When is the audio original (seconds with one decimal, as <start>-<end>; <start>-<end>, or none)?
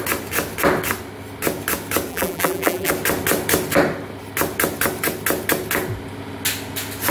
0.0-2.1; 2.9-7.1